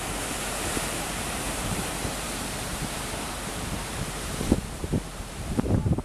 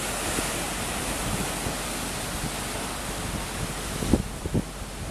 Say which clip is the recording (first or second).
second